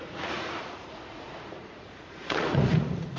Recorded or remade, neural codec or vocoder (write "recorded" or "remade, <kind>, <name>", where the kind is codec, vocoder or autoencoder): remade, vocoder, Vocos